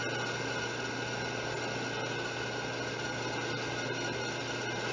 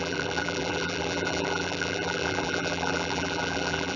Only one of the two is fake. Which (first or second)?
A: second